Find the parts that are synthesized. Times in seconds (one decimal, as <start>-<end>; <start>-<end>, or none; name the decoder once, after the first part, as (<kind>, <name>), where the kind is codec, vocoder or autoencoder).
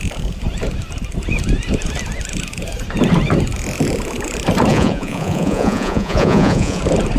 4.7-6.8 (vocoder, Vocos)